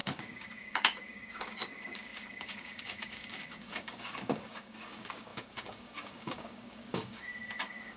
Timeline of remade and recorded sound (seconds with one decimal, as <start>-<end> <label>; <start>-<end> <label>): 0.0-8.0 remade